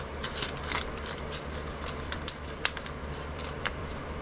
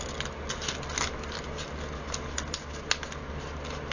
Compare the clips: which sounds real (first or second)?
second